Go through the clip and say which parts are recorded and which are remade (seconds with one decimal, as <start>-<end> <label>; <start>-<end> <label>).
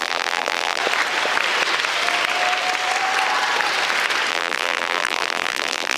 0.0-0.8 remade; 0.8-4.3 recorded; 4.3-6.0 remade